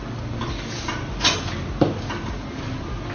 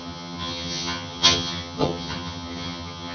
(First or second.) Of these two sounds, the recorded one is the first